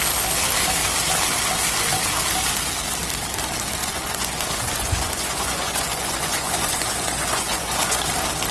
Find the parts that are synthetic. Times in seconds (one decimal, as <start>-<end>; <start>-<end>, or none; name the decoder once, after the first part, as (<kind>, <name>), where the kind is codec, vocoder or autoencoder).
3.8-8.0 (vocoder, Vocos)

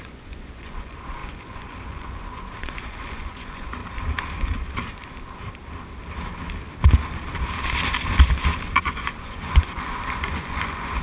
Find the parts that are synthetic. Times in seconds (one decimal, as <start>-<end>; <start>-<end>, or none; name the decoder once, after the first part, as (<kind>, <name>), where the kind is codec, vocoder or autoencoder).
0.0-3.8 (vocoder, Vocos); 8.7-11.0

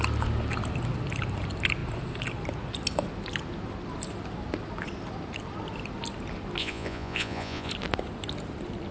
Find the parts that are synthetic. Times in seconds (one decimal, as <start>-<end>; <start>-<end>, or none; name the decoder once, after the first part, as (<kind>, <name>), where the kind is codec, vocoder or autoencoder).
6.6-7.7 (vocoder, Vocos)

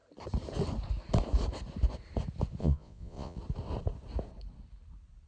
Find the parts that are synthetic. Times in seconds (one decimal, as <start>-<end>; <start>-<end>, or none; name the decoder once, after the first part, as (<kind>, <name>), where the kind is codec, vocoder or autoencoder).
2.6-3.4 (vocoder, Vocos)

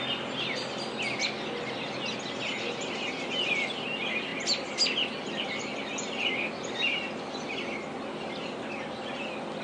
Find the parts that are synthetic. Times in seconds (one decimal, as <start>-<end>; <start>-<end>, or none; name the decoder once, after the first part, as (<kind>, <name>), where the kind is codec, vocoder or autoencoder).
none